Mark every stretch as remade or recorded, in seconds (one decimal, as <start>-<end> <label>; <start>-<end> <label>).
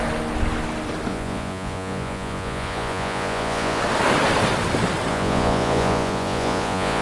0.0-1.1 recorded; 1.1-3.8 remade; 3.8-5.1 recorded; 5.1-7.0 remade